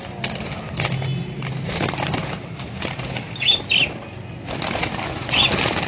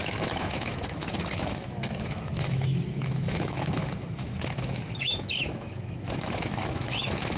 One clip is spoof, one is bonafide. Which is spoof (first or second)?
second